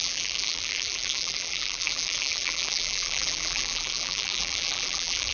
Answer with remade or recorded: remade